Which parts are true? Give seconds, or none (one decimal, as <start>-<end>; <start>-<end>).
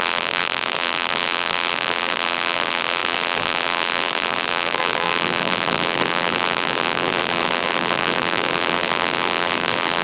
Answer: none